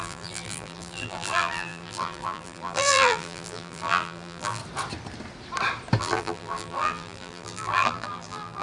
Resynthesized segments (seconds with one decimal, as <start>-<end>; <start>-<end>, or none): 0.0-4.6; 6.0-8.6